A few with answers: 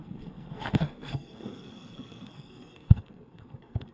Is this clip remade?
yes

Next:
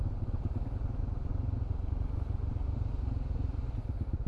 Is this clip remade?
no